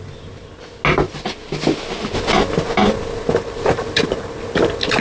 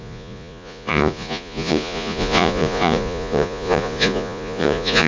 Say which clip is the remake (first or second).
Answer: second